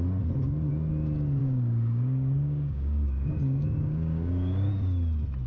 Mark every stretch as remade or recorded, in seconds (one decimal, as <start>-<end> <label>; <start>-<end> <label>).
0.0-1.4 recorded; 1.4-4.7 remade; 4.7-5.5 recorded